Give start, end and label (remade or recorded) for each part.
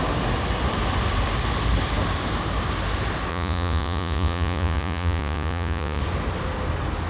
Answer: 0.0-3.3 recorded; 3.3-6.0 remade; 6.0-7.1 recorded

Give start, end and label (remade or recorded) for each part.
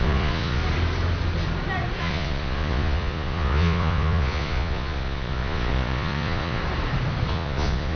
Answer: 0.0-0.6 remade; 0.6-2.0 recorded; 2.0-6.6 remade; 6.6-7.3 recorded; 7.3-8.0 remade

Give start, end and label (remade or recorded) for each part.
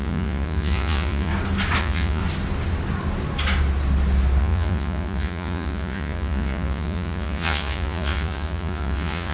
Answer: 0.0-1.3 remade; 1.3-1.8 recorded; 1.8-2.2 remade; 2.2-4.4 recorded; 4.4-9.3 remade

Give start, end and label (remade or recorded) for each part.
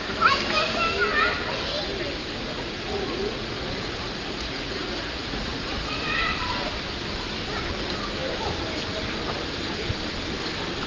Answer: 0.0-2.2 recorded; 2.2-6.0 remade; 6.0-10.9 recorded